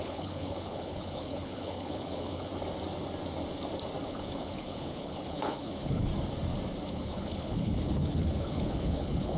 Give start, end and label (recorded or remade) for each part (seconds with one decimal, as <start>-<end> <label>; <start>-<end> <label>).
0.0-2.5 remade; 2.5-4.1 recorded; 4.1-6.1 remade; 6.1-6.9 recorded; 6.9-9.4 remade